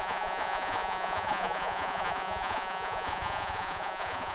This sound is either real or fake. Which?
fake